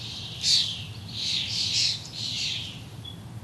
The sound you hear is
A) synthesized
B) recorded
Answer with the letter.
B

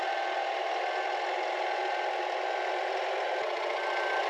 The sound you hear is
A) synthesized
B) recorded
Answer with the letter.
B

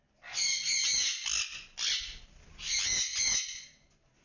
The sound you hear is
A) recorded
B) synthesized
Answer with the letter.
A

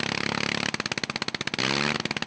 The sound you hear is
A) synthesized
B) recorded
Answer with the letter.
B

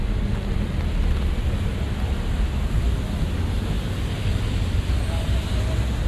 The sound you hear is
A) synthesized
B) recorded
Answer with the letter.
B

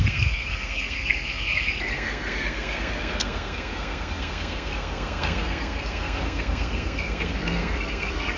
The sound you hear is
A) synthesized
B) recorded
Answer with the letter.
A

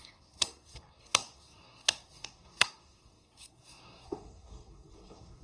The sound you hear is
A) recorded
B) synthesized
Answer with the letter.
B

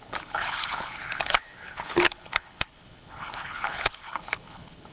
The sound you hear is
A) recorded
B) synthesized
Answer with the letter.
B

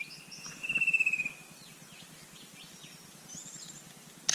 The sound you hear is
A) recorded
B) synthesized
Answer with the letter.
A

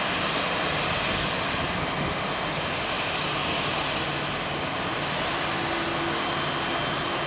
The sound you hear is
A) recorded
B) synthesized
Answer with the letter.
A